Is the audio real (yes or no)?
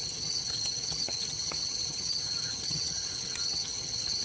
no